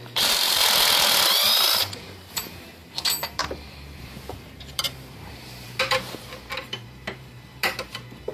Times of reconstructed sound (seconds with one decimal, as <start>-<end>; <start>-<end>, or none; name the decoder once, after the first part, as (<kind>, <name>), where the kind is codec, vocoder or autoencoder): 0.0-0.6 (vocoder, BigVGAN v2); 1.8-8.3